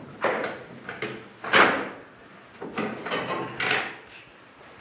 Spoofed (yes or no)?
no